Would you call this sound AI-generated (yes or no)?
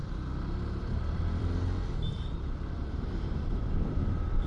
yes